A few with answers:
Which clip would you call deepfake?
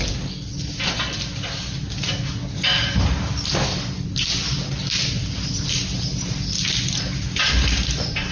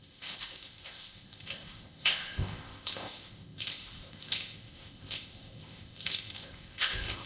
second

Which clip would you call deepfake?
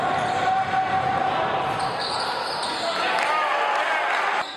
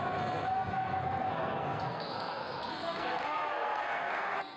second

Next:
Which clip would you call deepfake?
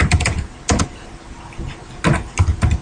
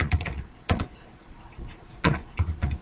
second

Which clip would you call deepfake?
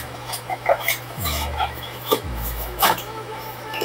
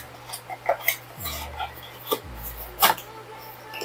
first